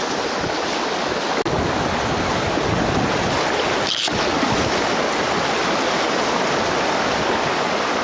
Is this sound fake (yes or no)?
no